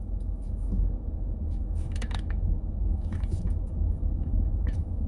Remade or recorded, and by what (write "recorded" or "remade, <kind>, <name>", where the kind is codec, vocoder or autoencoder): remade, autoencoder, DAC-VAE